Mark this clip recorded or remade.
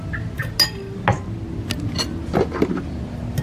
recorded